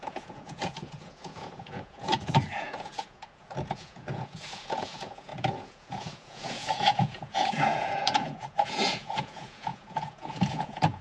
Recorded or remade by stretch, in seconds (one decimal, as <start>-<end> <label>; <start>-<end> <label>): 0.0-11.0 remade

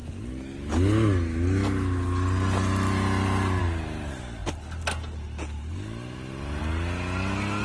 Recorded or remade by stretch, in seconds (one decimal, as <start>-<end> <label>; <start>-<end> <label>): 0.0-7.6 recorded